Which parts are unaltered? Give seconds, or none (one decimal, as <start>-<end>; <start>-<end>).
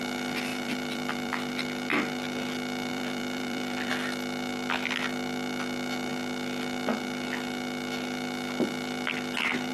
0.0-0.5; 1.5-2.9; 3.9-9.7